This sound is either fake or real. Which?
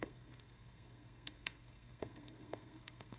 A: fake